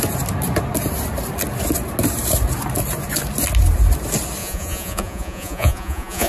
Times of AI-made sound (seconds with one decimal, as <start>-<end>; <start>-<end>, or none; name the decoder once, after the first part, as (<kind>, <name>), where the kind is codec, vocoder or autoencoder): 4.4-6.3 (vocoder, Vocos)